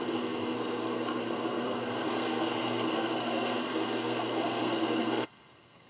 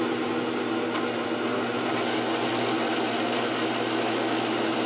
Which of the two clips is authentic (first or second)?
second